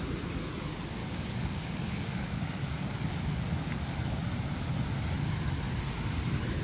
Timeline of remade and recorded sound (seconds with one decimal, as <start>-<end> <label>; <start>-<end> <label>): 0.0-1.0 recorded; 1.0-4.2 remade; 4.2-6.6 recorded